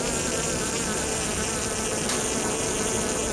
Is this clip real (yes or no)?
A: yes